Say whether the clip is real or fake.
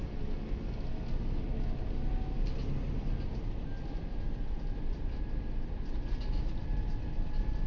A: real